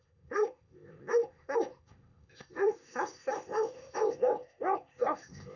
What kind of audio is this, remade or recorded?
remade